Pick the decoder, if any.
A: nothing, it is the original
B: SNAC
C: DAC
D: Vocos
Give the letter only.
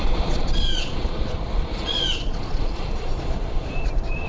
D